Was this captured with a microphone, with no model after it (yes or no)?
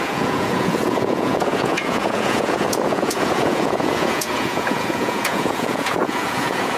no